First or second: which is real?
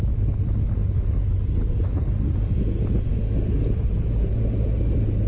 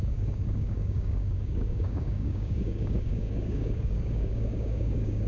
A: first